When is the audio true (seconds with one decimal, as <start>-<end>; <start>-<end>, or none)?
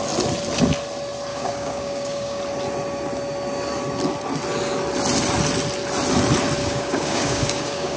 0.0-1.3; 2.4-6.6